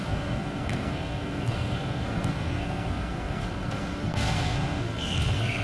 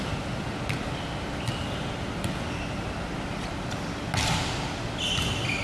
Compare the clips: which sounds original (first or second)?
second